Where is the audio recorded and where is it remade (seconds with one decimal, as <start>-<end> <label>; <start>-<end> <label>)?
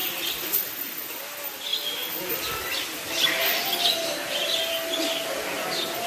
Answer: 0.0-6.1 recorded